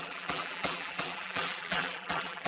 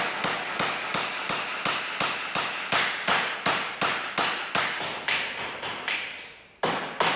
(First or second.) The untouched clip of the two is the second